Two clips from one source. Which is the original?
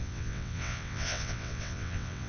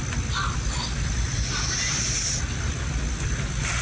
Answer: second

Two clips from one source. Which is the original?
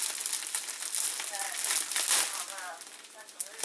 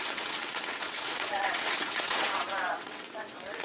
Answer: first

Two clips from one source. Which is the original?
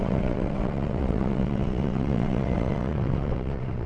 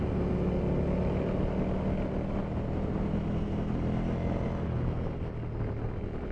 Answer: second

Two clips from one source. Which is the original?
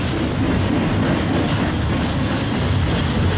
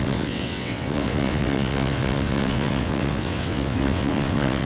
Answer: first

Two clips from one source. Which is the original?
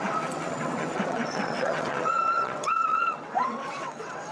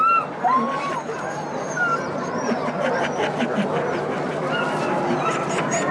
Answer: second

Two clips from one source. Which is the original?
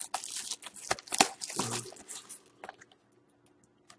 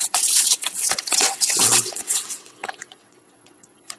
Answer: first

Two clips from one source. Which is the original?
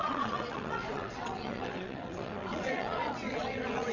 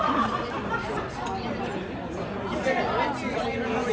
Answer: second